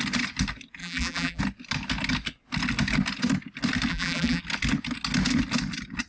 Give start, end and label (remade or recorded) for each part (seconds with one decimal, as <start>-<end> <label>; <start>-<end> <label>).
0.0-0.8 recorded; 0.8-1.4 remade; 1.4-3.9 recorded; 3.9-4.4 remade; 4.4-6.1 recorded